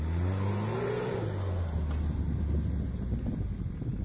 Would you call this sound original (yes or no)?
yes